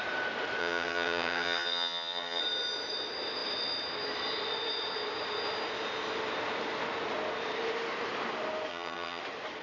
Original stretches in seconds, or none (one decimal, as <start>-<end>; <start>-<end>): 0.0-0.6; 2.4-8.7; 9.2-9.6